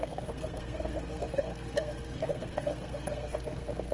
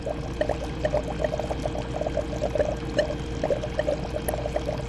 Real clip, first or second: second